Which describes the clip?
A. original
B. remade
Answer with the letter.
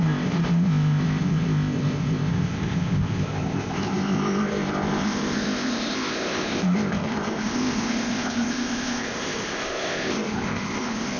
B